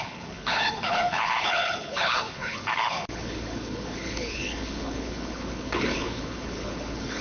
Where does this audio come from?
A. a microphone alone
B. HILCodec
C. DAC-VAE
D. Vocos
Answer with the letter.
B